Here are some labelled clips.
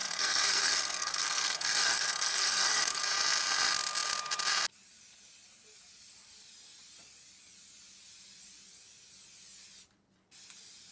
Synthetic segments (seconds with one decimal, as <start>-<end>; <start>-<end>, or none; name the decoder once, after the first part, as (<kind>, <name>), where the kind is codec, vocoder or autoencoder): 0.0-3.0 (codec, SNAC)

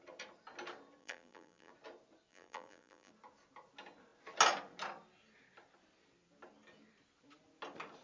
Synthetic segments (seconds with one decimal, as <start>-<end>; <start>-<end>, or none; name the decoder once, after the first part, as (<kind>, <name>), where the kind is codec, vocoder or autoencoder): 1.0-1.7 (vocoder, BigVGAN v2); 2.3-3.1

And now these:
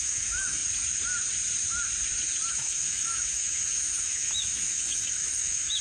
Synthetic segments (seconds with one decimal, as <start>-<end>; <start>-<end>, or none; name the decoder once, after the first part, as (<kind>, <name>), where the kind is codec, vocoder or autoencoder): 0.0-0.6 (autoencoder, DAC-VAE); 2.5-5.8

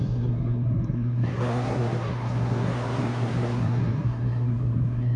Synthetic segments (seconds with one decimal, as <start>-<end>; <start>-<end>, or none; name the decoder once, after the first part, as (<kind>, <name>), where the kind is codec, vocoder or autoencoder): 0.0-5.2 (codec, SNAC)